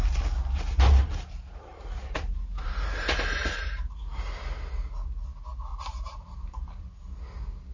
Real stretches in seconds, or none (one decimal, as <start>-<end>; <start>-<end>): 0.0-1.7; 4.4-5.7; 6.8-7.7